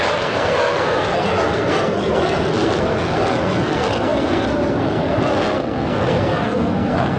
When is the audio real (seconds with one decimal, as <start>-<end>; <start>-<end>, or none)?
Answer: none